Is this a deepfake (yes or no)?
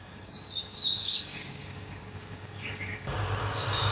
yes